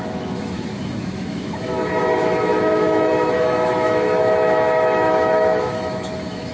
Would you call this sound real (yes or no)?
no